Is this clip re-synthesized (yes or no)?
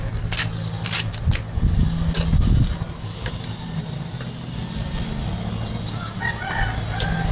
no